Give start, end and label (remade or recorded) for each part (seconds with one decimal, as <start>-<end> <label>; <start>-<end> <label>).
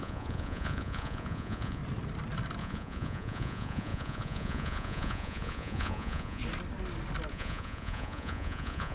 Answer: 0.0-1.8 remade; 1.8-2.6 recorded; 2.6-6.4 remade; 6.4-7.3 recorded; 7.3-8.9 remade